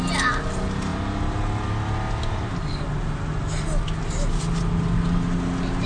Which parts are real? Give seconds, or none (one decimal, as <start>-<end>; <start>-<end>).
0.0-5.9